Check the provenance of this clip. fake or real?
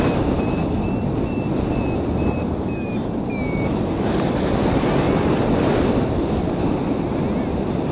real